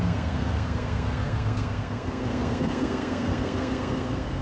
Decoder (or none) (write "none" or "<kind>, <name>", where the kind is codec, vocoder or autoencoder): codec, SNAC